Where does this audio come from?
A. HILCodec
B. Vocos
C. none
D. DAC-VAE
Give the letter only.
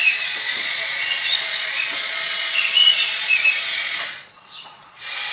B